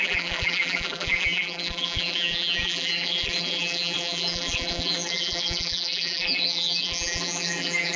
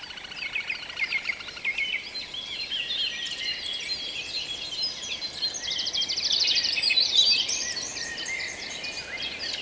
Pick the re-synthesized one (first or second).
first